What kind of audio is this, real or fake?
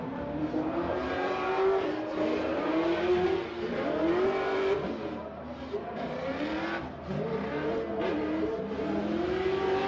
real